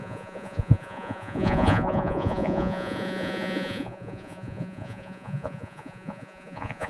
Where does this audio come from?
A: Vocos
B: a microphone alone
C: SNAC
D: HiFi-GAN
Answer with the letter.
A